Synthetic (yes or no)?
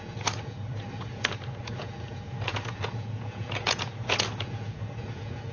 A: yes